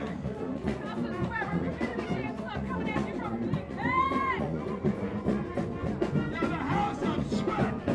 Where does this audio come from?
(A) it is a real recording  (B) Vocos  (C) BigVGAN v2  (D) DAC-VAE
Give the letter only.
B